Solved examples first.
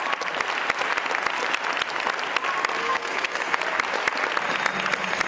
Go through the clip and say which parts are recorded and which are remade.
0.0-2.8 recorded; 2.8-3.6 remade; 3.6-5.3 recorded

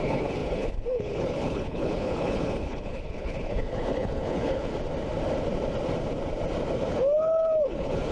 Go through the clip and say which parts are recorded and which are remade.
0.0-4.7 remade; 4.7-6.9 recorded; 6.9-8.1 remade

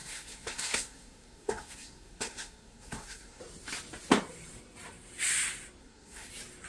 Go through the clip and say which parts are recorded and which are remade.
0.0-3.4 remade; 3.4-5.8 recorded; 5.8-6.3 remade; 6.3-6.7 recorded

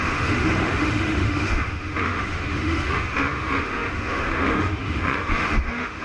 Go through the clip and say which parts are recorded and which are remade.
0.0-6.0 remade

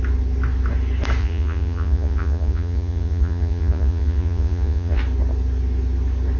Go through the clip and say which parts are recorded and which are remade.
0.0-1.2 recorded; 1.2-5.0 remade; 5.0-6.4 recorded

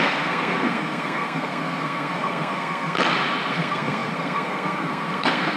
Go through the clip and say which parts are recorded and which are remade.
0.0-3.0 remade; 3.0-3.5 recorded; 3.5-5.6 remade